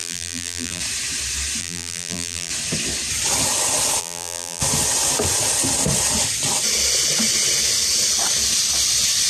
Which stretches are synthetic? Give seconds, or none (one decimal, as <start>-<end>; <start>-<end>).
0.0-0.8; 1.6-2.5; 4.0-4.6